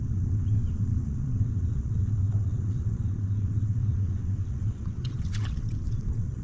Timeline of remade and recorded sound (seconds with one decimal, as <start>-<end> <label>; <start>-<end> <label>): 0.0-6.4 remade